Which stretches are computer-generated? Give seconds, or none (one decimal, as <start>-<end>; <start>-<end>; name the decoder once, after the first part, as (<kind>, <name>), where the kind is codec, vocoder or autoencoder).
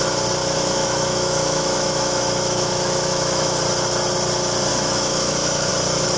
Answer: 0.4-3.6 (autoencoder, DAC-VAE); 4.7-5.7